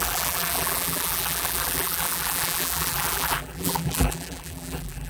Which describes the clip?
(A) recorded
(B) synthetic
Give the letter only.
B